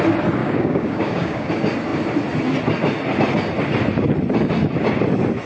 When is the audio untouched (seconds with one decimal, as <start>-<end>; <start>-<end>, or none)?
0.0-0.4; 1.5-5.5